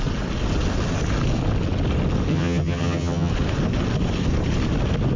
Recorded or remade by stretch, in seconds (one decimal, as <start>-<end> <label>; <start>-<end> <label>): 0.0-2.3 recorded; 2.3-3.3 remade; 3.3-5.2 recorded